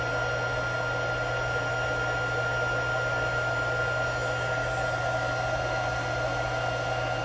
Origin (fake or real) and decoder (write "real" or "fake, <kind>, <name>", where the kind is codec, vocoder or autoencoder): real